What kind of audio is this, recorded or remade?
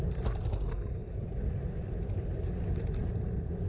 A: recorded